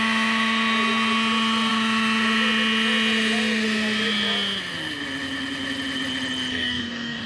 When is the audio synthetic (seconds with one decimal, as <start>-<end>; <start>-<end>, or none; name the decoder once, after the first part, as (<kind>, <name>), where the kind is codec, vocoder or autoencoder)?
6.5-7.3 (codec, DAC)